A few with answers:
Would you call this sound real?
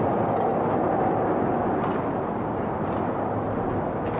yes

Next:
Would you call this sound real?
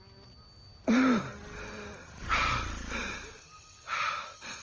yes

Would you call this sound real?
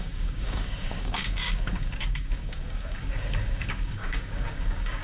no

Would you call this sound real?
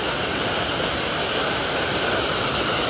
yes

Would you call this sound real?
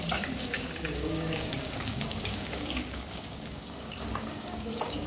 no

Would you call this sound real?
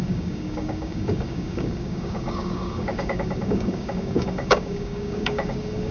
no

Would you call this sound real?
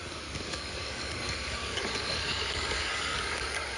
no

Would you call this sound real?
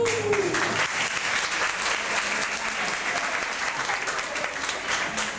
yes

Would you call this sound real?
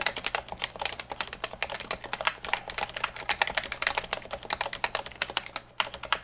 yes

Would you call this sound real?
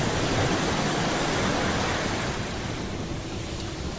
yes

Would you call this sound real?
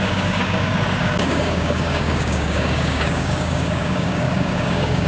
no